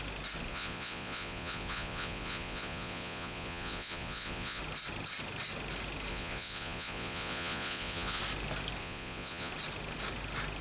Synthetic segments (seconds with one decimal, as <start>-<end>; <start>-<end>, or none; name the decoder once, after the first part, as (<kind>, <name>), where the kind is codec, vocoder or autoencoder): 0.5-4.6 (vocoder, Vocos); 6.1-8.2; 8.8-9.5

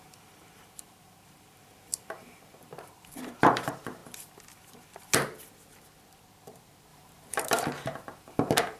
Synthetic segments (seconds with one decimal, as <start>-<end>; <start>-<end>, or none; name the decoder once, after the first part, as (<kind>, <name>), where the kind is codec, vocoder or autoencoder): 0.0-4.0 (vocoder, BigVGAN v2); 6.4-8.8

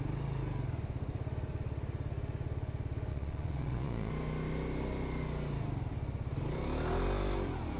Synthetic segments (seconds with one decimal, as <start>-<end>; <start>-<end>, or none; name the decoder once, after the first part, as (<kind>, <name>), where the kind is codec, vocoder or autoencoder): 3.1-4.1 (vocoder, Vocos)